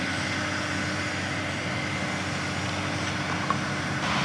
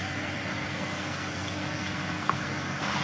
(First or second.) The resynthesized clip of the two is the second